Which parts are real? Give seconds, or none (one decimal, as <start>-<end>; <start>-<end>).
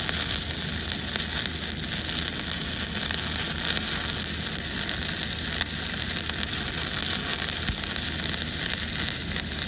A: 0.0-9.7